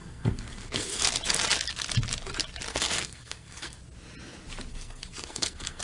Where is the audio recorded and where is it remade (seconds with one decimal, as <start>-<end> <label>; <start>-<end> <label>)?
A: 0.0-1.1 remade; 1.1-2.7 recorded; 2.7-3.8 remade; 3.8-4.7 recorded; 4.7-5.8 remade